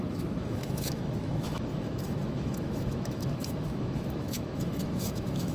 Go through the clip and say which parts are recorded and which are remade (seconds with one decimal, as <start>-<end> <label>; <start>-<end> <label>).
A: 0.0-5.5 remade